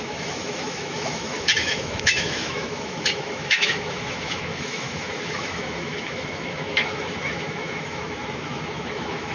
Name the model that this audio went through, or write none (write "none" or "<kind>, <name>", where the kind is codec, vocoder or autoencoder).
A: autoencoder, DAC-VAE